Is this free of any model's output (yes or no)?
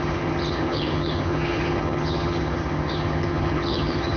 no